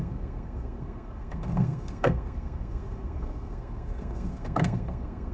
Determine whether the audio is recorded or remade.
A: remade